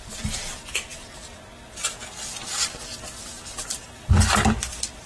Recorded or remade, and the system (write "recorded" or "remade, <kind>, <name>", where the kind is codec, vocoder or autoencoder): recorded